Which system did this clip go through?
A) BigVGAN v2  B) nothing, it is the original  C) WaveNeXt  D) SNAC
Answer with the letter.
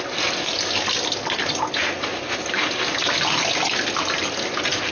B